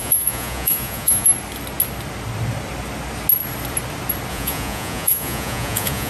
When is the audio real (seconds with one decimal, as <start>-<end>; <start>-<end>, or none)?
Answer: 1.3-4.3